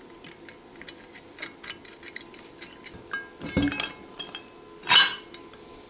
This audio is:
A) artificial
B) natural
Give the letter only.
B